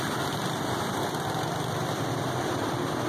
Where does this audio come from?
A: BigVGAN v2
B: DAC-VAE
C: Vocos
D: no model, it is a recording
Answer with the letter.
D